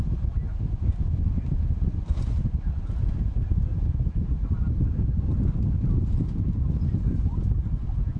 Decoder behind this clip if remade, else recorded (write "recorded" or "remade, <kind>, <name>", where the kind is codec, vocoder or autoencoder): recorded